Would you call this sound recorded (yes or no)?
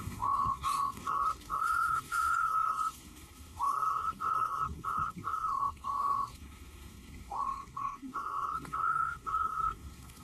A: no